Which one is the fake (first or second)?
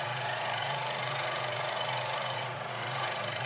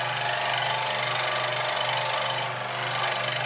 first